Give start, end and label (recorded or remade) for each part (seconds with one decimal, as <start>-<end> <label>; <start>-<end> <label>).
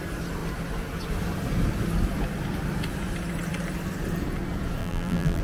0.0-4.8 recorded; 4.8-5.4 remade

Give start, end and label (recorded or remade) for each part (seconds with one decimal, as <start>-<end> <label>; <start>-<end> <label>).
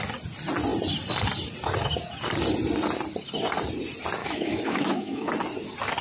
0.0-4.2 recorded; 4.2-5.3 remade; 5.3-6.0 recorded